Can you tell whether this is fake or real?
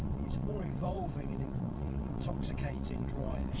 fake